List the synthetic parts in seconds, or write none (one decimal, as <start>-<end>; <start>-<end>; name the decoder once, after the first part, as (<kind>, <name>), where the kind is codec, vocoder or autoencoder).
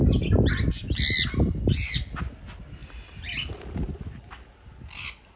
none